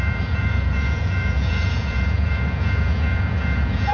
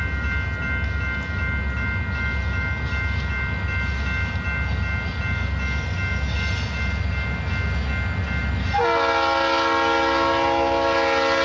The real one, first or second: second